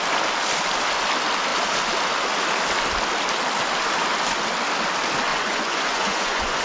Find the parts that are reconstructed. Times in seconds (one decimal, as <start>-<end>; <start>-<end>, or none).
5.3-6.6